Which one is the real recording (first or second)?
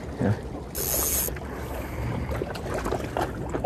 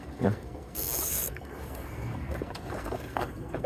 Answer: first